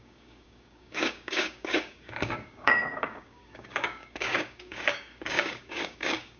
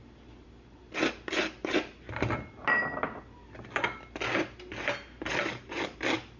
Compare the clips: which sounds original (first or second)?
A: second